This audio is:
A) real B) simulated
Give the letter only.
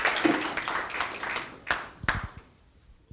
A